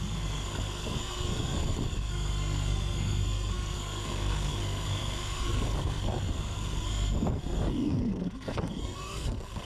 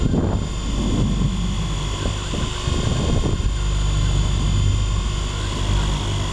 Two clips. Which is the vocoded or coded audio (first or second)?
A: first